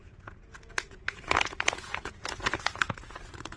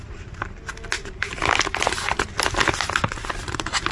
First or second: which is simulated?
first